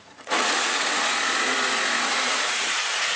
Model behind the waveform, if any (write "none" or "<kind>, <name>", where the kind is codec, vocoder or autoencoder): vocoder, Vocos